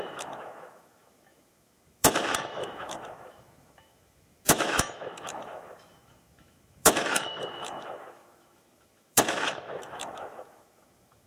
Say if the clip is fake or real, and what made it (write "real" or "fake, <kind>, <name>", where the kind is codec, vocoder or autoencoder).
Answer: fake, autoencoder, DAC-VAE